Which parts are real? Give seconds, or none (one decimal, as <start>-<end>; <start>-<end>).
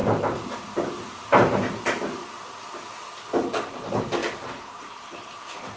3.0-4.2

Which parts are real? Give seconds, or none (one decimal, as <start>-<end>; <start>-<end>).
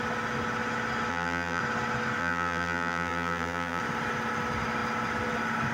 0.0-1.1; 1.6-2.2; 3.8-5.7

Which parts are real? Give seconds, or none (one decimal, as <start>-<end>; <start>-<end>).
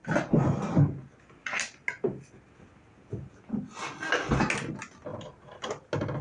0.0-5.1; 5.7-6.2